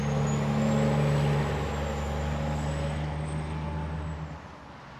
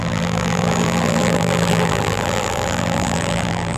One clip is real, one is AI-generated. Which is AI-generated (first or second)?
second